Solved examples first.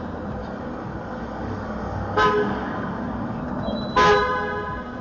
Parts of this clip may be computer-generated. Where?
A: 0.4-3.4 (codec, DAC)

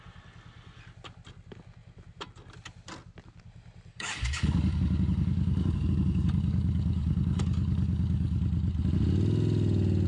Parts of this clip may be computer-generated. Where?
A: 3.9-8.4 (codec, DAC)